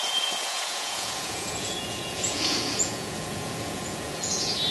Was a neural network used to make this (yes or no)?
yes